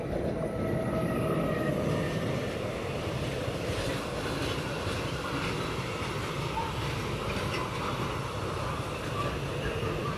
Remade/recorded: recorded